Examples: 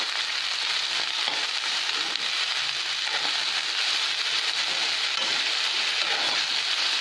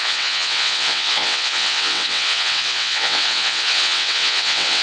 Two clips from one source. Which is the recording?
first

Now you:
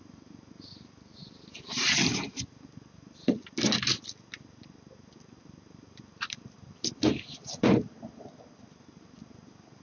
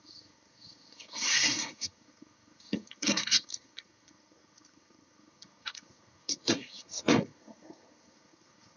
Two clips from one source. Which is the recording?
first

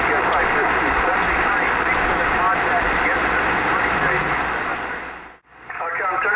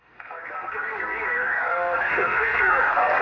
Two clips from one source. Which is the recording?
first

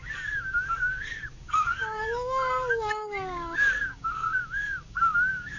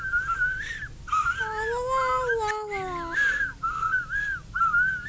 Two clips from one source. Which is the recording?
second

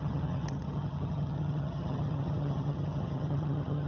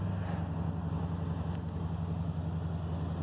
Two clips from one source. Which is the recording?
second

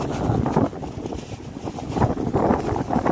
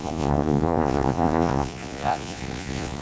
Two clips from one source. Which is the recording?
first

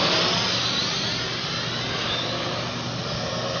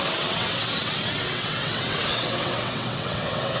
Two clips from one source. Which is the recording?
first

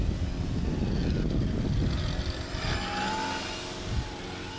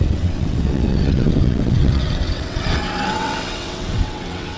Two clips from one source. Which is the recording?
first